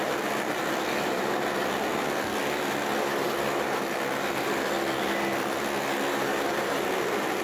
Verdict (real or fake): real